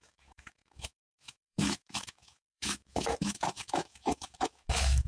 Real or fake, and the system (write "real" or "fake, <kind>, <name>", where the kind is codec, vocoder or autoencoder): fake, autoencoder, DAC-VAE